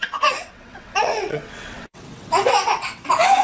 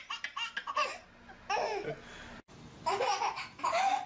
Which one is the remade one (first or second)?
first